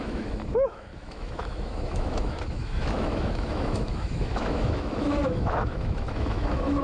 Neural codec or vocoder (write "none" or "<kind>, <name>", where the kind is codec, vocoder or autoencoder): autoencoder, DAC-VAE